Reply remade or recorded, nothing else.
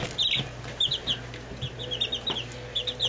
recorded